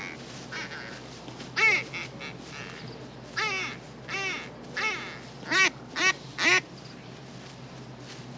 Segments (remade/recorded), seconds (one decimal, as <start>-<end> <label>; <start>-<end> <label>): 0.0-8.4 recorded